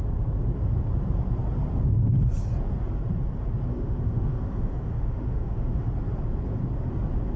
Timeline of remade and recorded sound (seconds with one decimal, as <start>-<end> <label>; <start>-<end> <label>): 0.0-3.7 recorded; 3.7-5.9 remade; 5.9-7.4 recorded